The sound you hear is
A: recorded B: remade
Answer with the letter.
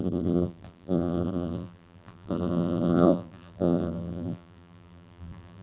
B